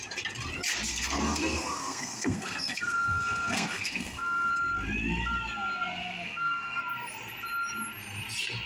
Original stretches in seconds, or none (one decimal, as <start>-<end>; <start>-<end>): 0.0-0.9; 4.5-6.0; 6.8-8.7